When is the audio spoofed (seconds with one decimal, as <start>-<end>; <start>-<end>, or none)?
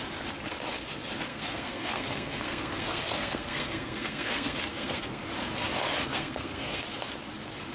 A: 1.3-5.2; 6.1-6.8